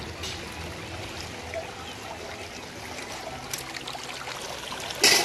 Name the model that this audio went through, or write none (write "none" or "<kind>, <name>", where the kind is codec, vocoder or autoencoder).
none